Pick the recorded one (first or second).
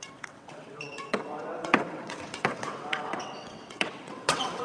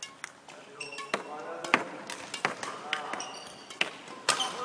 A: second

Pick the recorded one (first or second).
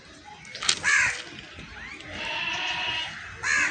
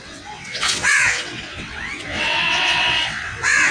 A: first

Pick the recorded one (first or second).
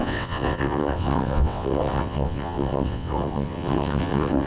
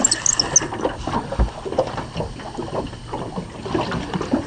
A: second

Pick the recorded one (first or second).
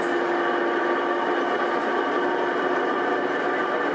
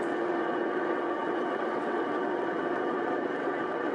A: first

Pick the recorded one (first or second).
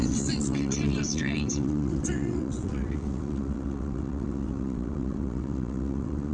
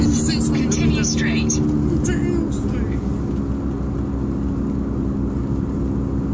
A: second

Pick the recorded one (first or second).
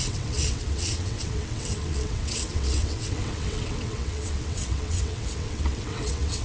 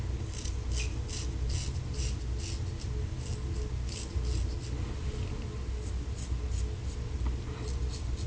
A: second